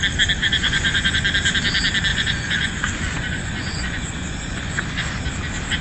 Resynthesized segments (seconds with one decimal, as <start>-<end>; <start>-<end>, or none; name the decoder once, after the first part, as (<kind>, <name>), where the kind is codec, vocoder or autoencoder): 0.4-1.2 (vocoder, Vocos); 2.1-5.2